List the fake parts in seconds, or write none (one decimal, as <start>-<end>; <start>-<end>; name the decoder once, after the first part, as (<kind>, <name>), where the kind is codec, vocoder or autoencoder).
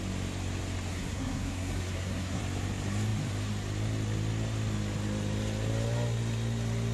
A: 0.9-2.4 (codec, SNAC)